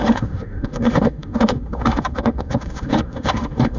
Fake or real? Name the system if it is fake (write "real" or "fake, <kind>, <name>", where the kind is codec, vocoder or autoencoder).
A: fake, autoencoder, DAC-VAE